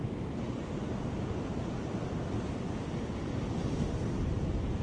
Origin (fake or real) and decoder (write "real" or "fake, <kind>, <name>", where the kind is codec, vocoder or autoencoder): real